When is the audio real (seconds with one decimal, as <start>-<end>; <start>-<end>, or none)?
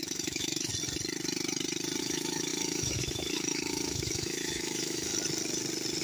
0.7-2.0; 5.1-6.0